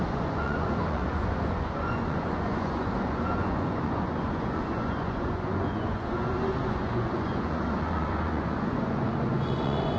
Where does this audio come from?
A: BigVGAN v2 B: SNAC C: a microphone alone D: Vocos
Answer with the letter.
D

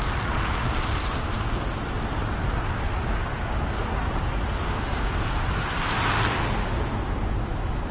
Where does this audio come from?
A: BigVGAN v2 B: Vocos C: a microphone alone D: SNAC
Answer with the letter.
C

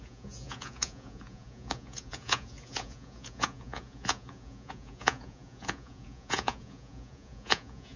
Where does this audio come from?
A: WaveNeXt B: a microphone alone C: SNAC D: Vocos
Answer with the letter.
D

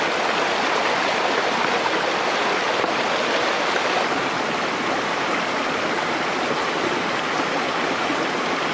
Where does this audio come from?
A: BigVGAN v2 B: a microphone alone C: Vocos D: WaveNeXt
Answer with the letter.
B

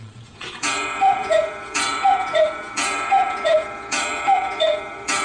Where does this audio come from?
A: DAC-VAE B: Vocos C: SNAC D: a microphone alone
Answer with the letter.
B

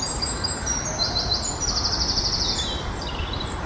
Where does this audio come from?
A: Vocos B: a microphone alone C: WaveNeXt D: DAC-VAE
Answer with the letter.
B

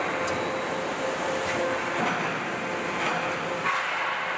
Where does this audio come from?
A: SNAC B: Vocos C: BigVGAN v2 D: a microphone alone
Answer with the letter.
D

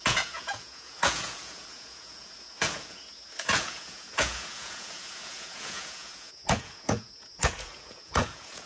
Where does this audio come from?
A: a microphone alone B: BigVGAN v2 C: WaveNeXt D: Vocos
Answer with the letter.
D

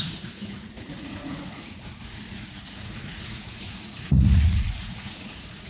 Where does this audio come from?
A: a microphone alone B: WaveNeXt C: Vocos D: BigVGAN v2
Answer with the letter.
C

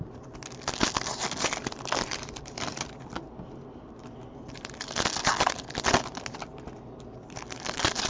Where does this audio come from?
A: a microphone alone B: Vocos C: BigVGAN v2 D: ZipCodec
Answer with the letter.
A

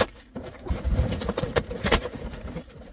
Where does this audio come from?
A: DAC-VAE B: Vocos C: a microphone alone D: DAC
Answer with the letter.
B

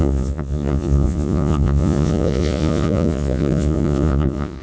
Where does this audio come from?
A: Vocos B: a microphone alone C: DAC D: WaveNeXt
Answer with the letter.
A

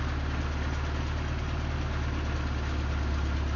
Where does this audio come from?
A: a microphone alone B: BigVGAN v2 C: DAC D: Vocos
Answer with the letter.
A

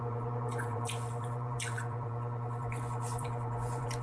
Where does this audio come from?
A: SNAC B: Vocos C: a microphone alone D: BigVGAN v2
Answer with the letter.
B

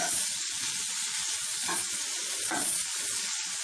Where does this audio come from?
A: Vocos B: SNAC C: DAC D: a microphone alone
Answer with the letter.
A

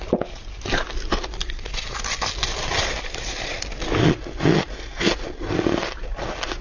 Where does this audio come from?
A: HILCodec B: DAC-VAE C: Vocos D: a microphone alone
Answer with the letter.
D